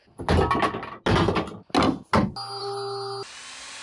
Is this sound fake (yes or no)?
no